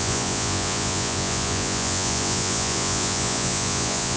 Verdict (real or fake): fake